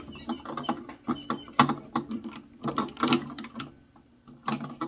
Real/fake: real